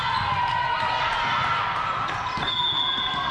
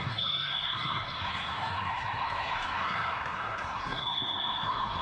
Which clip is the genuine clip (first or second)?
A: first